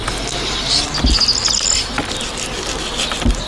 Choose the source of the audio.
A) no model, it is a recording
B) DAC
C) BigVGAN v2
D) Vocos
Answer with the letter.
A